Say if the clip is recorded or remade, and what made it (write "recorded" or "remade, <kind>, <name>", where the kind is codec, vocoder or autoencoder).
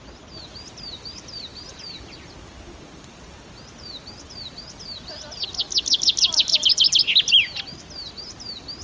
recorded